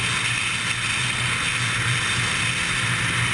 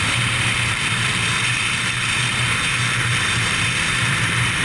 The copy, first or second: second